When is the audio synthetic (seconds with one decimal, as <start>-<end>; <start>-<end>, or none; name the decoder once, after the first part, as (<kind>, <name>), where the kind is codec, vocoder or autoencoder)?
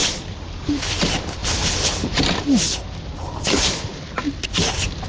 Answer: 0.0-0.8 (vocoder, BigVGAN v2); 1.4-3.1